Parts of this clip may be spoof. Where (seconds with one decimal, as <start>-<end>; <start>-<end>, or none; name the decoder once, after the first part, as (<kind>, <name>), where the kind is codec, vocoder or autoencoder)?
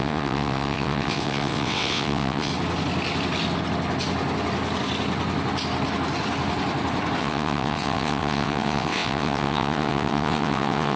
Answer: 0.0-2.5 (vocoder, WaveNeXt); 7.2-11.0